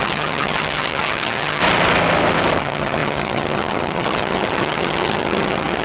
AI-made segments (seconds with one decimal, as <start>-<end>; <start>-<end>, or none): 0.0-1.6; 2.6-5.8